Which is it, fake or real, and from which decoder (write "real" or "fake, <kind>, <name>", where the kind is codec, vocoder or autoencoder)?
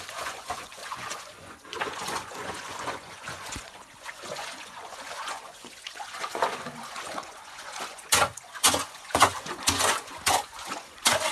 fake, vocoder, Vocos